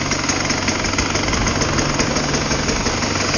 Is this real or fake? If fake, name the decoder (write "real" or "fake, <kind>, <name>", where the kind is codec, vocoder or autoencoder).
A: real